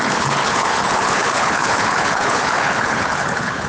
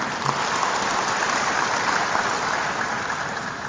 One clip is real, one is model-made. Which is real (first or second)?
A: second